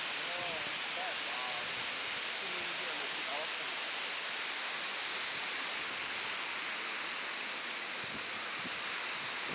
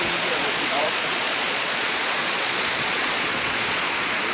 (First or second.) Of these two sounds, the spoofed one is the second